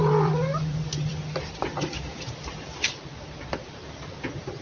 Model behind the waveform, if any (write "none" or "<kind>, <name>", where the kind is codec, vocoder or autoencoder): vocoder, BigVGAN v2